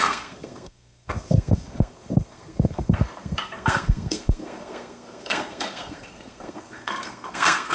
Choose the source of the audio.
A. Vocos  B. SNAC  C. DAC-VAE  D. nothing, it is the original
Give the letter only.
B